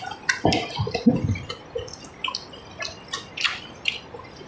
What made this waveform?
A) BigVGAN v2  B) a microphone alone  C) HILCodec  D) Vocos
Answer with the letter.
B